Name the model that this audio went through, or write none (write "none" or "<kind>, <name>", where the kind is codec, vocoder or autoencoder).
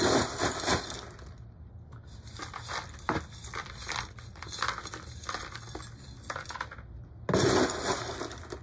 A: none